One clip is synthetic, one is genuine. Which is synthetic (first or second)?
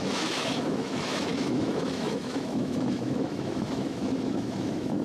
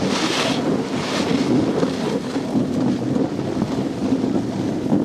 first